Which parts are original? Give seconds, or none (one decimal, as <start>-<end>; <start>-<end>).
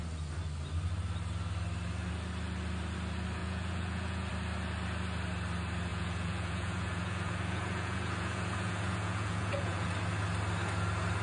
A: 0.0-3.4; 4.3-5.9; 9.9-11.2